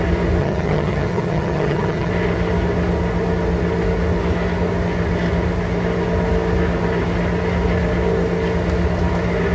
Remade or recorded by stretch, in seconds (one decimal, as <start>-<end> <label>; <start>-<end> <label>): 0.0-0.4 recorded; 0.4-2.1 remade; 2.1-9.5 recorded

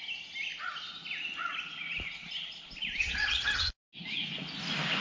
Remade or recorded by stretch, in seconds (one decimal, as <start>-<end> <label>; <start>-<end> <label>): 0.0-3.0 recorded; 3.0-3.7 remade; 3.7-5.0 recorded

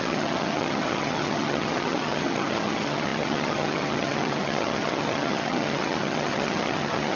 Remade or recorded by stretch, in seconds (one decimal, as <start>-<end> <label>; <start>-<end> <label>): 0.0-7.2 remade

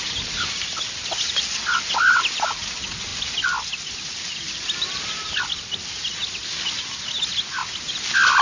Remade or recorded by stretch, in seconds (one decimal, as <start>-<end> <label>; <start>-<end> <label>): 0.0-8.4 recorded

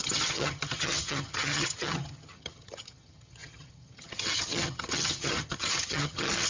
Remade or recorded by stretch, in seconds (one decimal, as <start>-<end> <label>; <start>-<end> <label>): 0.0-6.5 remade

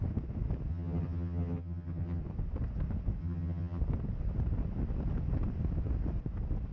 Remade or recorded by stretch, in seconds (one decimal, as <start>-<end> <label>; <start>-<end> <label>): 0.0-0.7 recorded; 0.7-2.2 remade; 2.2-3.2 recorded; 3.2-3.8 remade; 3.8-6.7 recorded

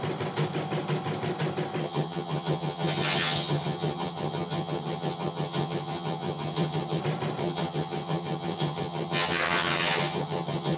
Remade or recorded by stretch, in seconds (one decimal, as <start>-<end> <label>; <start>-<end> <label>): 0.0-1.8 recorded; 1.8-7.0 remade; 7.0-7.4 recorded; 7.4-10.8 remade

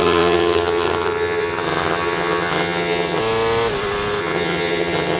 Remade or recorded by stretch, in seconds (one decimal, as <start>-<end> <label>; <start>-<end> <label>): 0.0-3.2 remade; 3.2-4.2 recorded; 4.2-5.2 remade